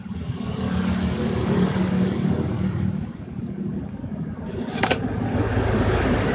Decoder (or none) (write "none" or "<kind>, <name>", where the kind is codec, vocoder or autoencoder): codec, DAC